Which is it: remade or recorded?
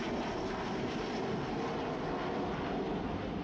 recorded